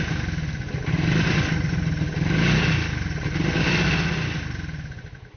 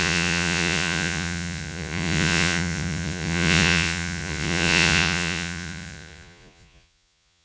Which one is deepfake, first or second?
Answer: second